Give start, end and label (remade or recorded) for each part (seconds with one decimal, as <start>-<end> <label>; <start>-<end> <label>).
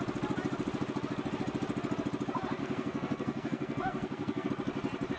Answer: 0.0-2.6 recorded; 2.6-4.5 remade; 4.5-5.2 recorded